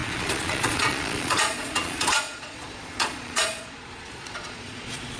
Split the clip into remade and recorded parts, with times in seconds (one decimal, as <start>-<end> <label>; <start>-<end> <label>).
0.0-5.2 remade

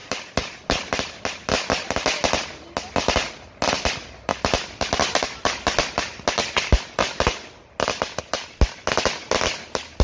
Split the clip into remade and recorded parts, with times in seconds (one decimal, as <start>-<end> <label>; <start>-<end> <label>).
0.0-10.0 recorded

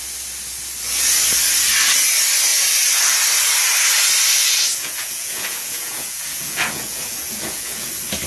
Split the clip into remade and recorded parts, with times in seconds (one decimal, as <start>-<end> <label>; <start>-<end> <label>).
0.0-4.7 recorded; 4.7-7.9 remade; 7.9-8.3 recorded

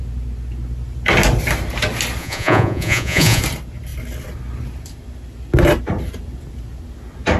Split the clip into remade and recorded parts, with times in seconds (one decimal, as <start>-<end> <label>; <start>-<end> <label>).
0.0-2.2 recorded; 2.2-3.4 remade; 3.4-7.4 recorded

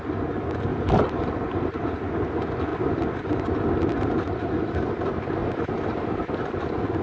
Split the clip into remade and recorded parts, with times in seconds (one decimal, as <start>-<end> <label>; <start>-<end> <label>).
0.0-0.7 recorded; 0.7-1.9 remade; 1.9-7.0 recorded

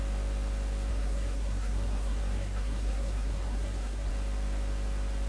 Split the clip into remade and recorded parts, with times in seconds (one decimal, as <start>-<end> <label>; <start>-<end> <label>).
0.0-0.9 recorded; 0.9-4.1 remade; 4.1-5.3 recorded

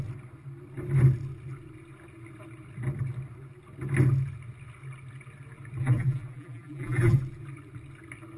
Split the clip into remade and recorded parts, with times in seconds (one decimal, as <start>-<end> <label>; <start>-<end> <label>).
0.0-5.8 recorded; 5.8-7.2 remade; 7.2-8.4 recorded

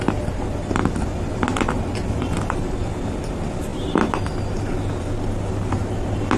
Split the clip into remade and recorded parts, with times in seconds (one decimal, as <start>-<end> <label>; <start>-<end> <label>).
0.0-6.4 recorded